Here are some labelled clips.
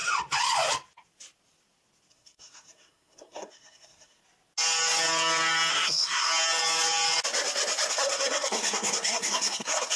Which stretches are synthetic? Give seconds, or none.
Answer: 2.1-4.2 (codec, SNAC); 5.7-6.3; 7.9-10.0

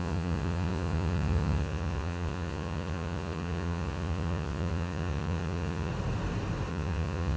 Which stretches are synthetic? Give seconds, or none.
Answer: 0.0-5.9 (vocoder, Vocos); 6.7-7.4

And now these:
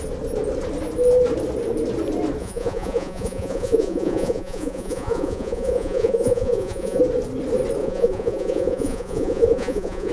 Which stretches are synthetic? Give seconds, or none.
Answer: 2.4-7.0 (vocoder, Vocos); 7.8-10.1

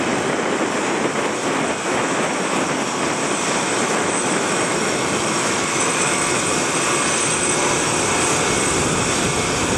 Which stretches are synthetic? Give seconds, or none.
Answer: 3.8-6.4 (autoencoder, DAC-VAE)

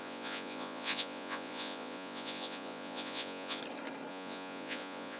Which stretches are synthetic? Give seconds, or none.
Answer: 0.0-3.6 (vocoder, Vocos); 4.1-5.2

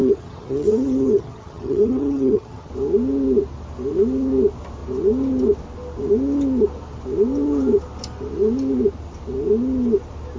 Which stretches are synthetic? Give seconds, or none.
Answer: 0.0-2.7 (vocoder, HiFi-GAN)

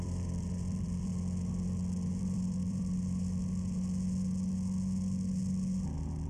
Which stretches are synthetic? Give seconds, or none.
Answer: 0.0-1.1 (vocoder, BigVGAN v2); 2.2-2.8